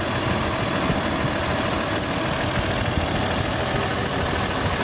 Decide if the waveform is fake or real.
real